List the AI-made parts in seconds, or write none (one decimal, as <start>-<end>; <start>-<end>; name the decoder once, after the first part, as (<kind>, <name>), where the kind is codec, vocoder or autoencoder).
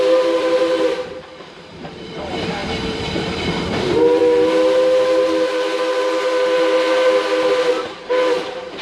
0.0-4.2 (vocoder, BigVGAN v2); 7.5-8.8